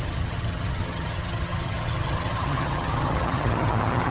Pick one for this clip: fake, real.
fake